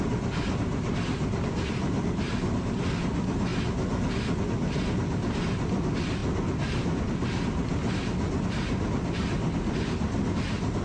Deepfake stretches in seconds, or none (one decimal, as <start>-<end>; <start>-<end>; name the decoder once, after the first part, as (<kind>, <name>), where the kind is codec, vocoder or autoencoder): none